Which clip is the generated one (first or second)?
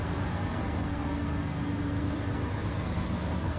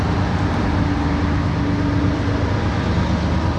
first